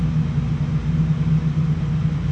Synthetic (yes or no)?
no